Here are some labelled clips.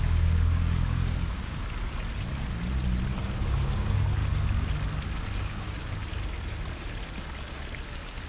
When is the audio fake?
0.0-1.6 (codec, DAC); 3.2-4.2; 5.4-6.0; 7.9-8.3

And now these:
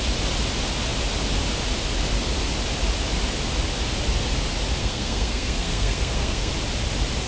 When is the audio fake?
4.8-6.5 (codec, SNAC)

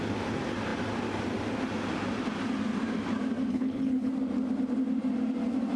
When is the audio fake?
3.5-4.1 (codec, HILCodec)